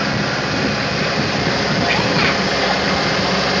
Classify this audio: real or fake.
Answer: real